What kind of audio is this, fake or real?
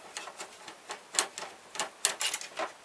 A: real